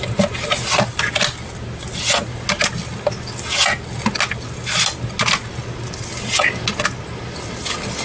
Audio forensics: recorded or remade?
recorded